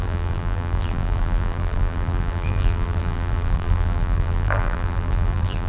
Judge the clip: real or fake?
fake